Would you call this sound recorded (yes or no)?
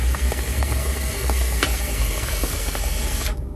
no